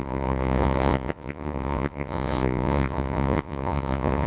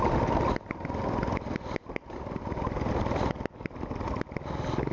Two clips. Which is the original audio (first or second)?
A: second